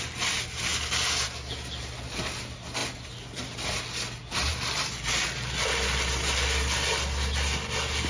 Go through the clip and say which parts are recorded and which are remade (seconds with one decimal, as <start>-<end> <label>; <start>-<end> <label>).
0.0-8.1 recorded